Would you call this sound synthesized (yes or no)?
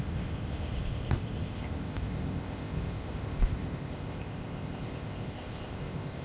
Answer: yes